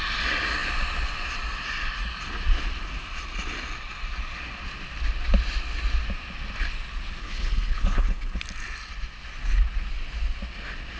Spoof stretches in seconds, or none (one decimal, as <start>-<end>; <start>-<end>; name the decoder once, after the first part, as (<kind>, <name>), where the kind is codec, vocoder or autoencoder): 7.2-8.4 (codec, HILCodec)